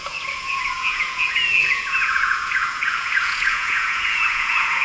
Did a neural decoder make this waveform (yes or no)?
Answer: yes